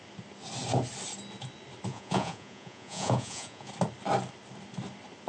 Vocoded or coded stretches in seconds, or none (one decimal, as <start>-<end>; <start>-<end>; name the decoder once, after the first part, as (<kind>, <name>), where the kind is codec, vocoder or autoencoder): 1.9-3.7 (vocoder, Vocos)